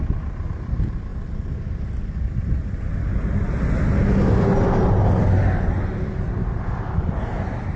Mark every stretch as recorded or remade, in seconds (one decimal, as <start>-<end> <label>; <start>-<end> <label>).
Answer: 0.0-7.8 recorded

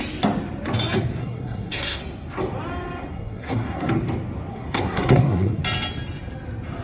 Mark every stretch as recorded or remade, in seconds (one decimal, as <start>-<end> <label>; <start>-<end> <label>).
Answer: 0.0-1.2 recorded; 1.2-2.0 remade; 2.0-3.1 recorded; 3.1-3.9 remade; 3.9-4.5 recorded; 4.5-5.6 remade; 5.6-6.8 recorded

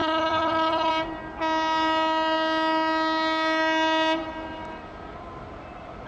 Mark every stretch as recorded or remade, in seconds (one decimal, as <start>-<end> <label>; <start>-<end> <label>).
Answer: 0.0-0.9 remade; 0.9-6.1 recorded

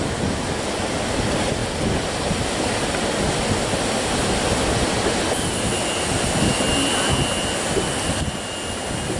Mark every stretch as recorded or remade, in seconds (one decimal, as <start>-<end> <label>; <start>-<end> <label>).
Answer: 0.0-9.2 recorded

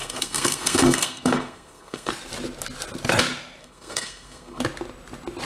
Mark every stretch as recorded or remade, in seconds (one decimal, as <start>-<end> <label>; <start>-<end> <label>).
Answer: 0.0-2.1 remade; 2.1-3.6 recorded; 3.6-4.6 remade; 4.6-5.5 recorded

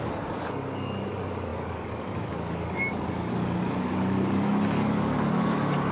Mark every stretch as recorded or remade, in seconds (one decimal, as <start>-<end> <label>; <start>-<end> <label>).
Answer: 0.0-5.9 remade